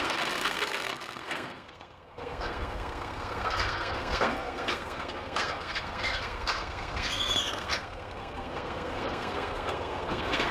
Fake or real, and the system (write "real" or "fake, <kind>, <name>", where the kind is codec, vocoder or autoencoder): fake, codec, SNAC